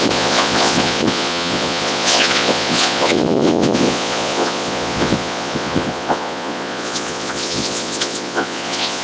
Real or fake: fake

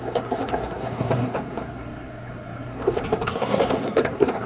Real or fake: fake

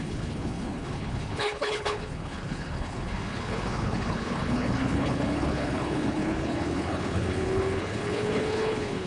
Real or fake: fake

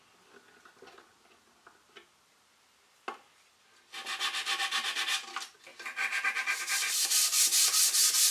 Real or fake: real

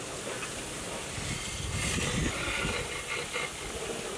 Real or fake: real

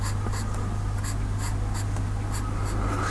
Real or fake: real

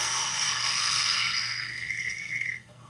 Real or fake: fake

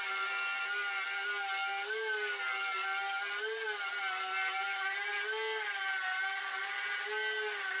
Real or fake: real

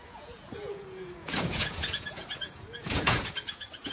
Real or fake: fake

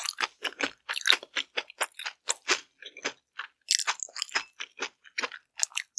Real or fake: real